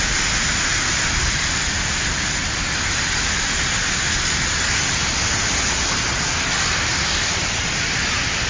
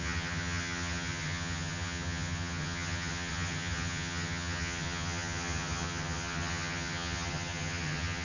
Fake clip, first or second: second